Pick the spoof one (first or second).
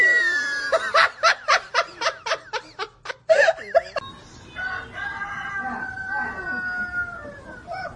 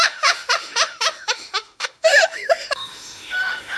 second